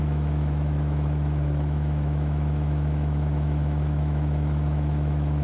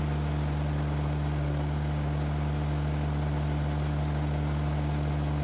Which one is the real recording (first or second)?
second